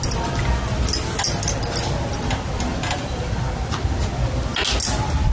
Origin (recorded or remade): recorded